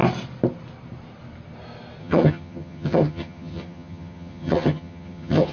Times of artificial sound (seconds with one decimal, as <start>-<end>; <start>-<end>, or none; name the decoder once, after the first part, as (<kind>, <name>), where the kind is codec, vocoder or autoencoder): 2.0-5.5 (vocoder, HiFi-GAN)